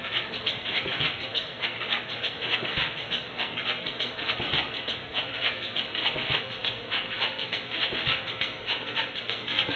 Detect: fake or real fake